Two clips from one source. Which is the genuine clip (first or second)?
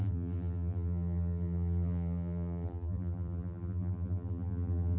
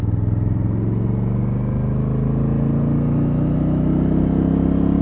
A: second